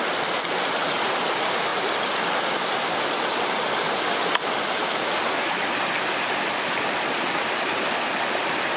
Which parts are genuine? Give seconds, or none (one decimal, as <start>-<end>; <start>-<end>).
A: 0.0-8.8